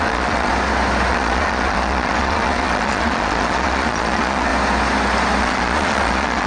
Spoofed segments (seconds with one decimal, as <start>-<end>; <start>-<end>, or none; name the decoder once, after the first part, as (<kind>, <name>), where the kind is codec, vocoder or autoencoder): 0.0-0.5 (vocoder, Vocos); 1.1-4.5; 5.4-6.5